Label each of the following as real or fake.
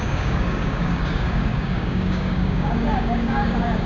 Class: fake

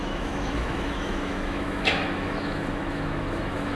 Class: fake